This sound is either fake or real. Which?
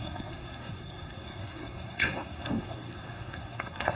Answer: fake